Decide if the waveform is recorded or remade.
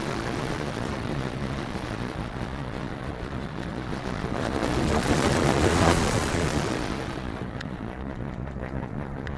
remade